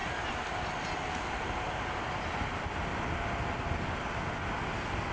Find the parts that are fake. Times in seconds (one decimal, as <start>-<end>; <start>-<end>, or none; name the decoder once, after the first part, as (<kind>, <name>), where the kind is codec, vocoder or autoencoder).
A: none